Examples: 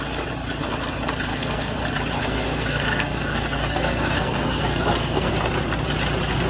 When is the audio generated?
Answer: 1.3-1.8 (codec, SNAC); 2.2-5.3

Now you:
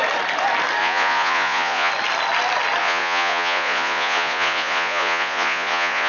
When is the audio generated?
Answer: 0.8-1.9 (vocoder, Vocos); 2.8-6.1

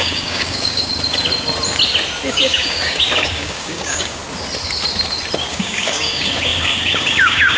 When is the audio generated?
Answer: 0.0-0.9 (codec, DAC); 2.3-4.2; 5.5-7.6

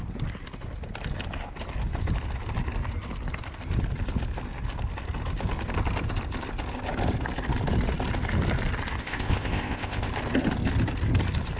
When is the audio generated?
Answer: 9.0-10.1 (codec, ZipCodec)